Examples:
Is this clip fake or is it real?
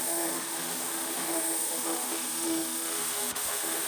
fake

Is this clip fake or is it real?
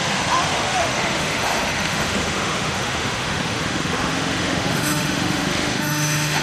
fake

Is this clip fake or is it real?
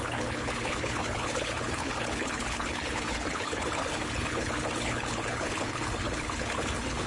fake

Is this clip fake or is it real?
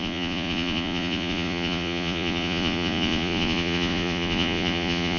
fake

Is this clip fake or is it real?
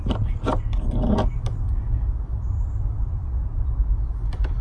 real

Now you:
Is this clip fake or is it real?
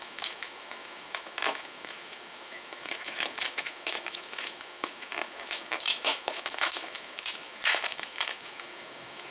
fake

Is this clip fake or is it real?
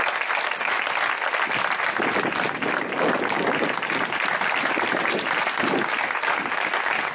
real